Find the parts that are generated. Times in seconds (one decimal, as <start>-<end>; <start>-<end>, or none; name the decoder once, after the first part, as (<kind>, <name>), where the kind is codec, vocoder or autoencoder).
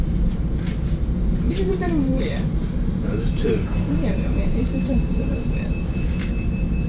2.1-5.7 (vocoder, BigVGAN v2)